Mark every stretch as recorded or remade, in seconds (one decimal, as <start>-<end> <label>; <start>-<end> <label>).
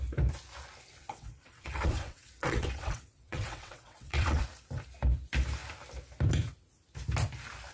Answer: 0.0-1.0 recorded; 1.0-4.4 remade; 4.4-7.7 recorded